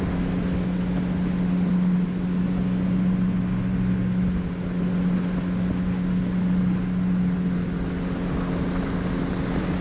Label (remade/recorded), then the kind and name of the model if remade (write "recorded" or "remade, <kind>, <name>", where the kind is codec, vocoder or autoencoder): recorded